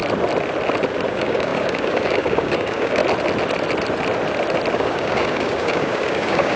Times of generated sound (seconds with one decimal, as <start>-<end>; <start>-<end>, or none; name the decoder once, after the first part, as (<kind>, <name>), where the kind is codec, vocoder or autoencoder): 1.1-3.0 (codec, DAC); 4.7-6.6